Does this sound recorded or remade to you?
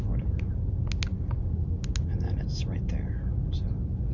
recorded